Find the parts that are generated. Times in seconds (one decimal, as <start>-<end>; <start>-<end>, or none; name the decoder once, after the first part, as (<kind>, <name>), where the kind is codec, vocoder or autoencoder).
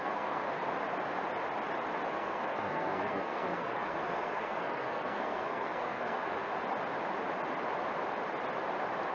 0.0-0.4 (codec, SNAC); 2.1-6.5